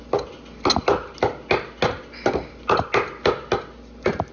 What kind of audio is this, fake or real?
real